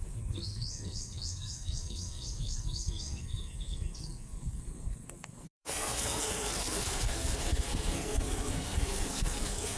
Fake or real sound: fake